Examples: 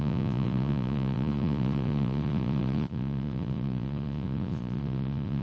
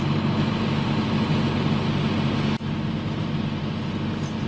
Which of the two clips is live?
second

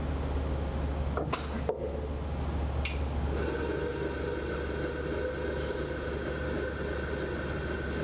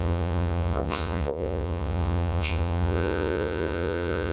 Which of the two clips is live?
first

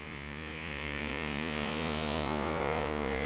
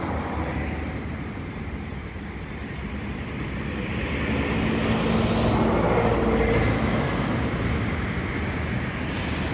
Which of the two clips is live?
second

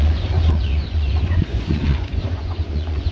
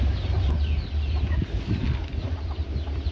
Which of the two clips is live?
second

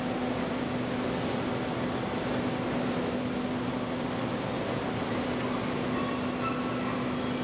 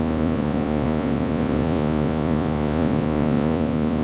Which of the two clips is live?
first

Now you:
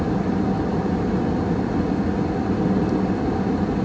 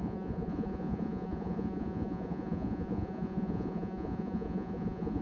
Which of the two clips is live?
first